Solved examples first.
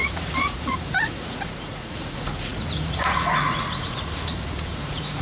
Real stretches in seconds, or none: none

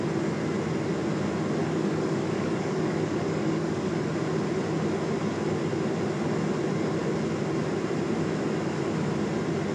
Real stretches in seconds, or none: 0.0-1.6; 3.9-9.7